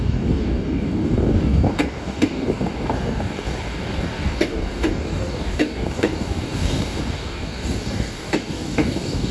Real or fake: fake